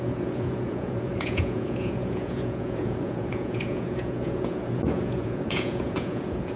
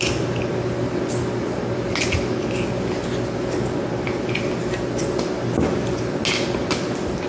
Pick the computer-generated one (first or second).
first